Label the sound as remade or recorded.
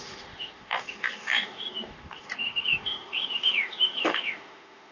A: remade